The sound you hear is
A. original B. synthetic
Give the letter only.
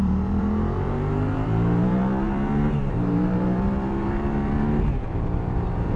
B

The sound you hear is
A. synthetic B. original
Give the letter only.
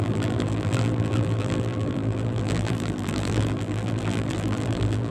A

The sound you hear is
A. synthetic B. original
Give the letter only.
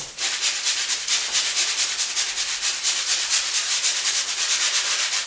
A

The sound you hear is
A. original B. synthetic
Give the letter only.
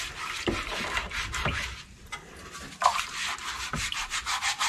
A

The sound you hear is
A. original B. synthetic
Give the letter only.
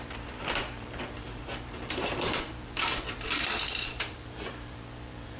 B